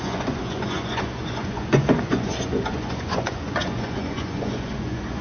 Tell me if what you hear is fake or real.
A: fake